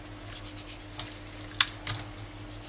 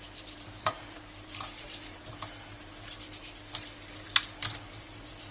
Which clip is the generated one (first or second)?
second